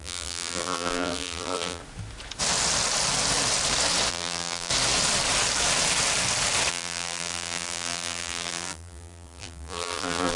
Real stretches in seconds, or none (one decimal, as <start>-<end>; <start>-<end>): 1.8-4.1; 4.7-6.7